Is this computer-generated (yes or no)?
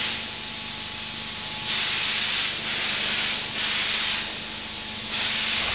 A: no